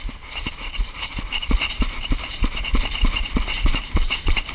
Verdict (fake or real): fake